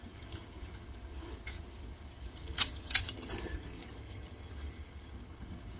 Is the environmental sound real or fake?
fake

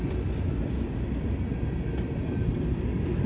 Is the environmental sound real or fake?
real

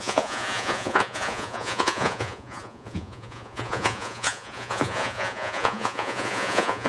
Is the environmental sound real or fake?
fake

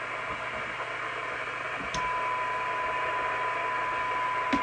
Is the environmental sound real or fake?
real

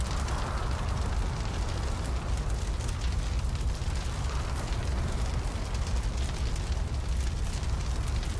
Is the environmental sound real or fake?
real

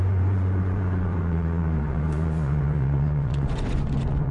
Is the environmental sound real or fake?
fake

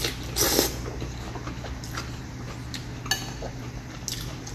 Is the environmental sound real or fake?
real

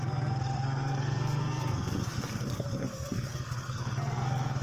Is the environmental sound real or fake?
fake